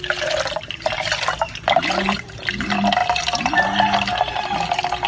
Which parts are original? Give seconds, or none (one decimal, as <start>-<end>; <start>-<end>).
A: 0.0-5.1